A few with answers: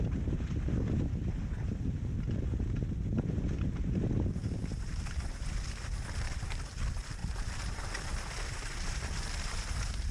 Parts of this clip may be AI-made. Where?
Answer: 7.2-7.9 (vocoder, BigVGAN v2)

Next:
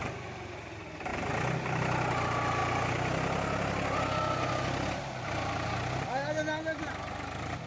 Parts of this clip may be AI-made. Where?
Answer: none